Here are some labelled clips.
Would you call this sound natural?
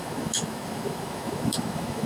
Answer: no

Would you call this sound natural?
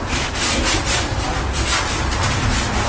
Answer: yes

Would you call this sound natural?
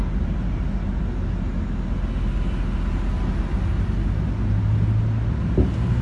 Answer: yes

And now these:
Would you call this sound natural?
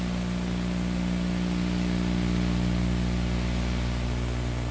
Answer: yes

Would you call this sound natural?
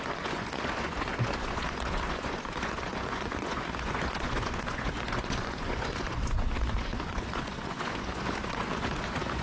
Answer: no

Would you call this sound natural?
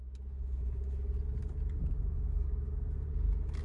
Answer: yes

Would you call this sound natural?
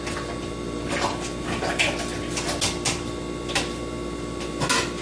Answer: yes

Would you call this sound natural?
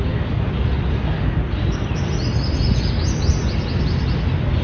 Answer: yes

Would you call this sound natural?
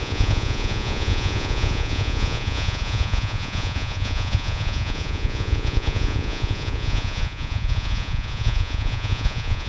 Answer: no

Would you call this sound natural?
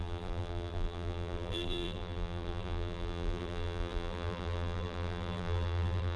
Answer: no